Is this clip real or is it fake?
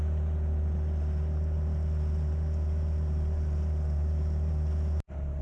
real